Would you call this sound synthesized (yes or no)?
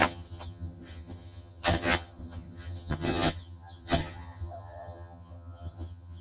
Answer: yes